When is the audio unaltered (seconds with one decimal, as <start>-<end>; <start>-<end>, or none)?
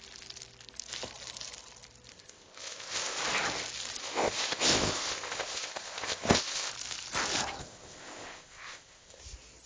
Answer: 0.0-2.1; 3.2-4.0; 6.7-7.6; 9.2-9.7